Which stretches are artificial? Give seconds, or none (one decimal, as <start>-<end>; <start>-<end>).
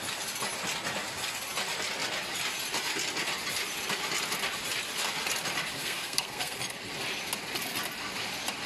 5.8-6.6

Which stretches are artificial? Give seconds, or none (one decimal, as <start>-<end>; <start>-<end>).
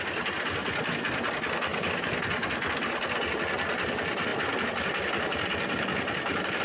none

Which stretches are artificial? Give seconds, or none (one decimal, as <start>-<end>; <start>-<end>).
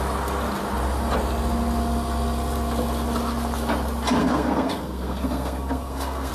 4.2-6.3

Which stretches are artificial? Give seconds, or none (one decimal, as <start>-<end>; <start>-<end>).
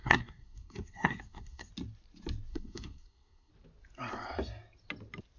0.0-1.7; 2.5-3.5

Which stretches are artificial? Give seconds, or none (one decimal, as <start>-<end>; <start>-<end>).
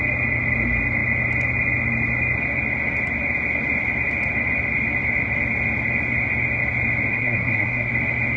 7.1-7.9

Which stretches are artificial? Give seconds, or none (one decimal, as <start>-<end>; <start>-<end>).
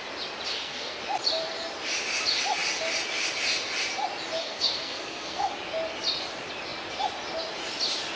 0.5-1.0; 4.4-5.5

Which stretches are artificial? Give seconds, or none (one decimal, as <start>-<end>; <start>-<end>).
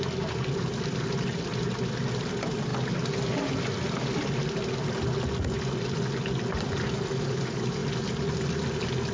none